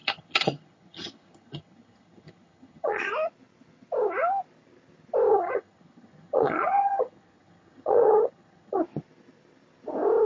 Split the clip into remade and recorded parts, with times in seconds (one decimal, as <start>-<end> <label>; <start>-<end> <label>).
0.0-3.1 remade; 3.1-5.3 recorded; 5.3-8.8 remade; 8.8-10.3 recorded